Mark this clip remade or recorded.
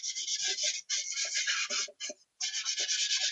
recorded